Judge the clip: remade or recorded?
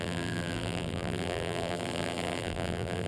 remade